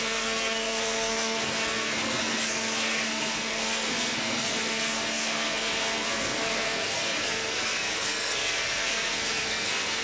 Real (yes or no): no